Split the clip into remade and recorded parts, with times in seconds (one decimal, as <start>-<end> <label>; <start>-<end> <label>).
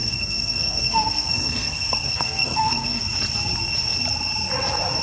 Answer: 0.0-3.0 remade; 3.0-5.0 recorded